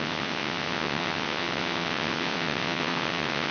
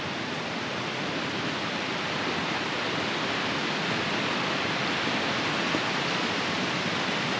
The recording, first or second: second